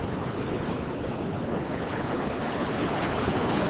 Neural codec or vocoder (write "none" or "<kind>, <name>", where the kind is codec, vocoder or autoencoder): codec, HILCodec